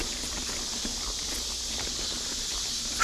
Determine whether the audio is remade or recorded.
recorded